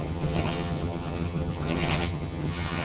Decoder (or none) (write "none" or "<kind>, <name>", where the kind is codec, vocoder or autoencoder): vocoder, HiFi-GAN